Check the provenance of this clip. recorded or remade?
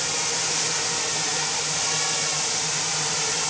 recorded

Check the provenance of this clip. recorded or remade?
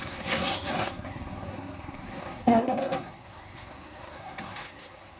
remade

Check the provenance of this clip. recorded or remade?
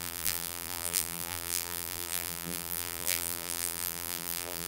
remade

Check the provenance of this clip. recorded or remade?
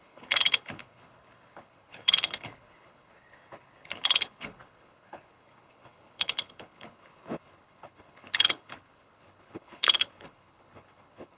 remade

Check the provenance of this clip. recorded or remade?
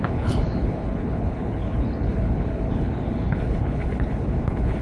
remade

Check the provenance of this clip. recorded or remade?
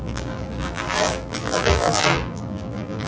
remade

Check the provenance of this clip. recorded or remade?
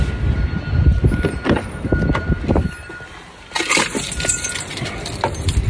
recorded